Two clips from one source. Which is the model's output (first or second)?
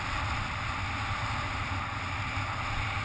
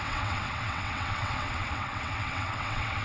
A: second